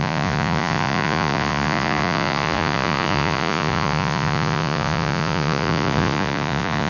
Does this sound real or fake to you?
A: fake